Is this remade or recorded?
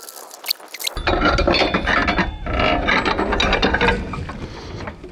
recorded